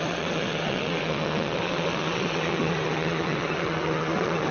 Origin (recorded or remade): remade